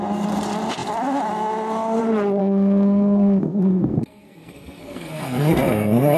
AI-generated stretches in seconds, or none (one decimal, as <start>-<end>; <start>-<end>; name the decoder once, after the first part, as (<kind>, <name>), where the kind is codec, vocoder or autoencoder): 2.4-6.2 (codec, SNAC)